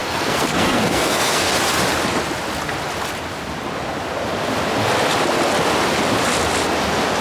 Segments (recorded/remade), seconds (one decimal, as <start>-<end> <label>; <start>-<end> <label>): 0.0-1.5 remade; 1.5-7.2 recorded